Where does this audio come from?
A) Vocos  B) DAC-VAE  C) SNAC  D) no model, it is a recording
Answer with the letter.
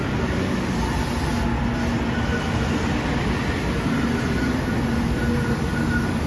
D